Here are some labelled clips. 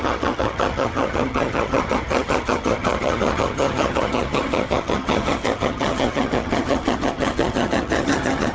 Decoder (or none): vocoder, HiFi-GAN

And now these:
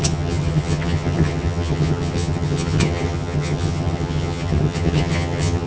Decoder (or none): vocoder, HiFi-GAN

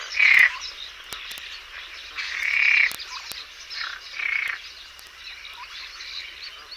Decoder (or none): none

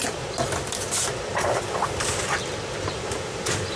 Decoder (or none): none